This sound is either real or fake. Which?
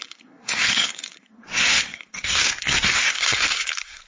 fake